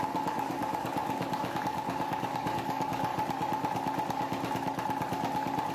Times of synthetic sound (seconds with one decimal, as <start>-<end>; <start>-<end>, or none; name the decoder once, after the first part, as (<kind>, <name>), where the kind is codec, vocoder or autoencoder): 0.0-3.1 (codec, DAC)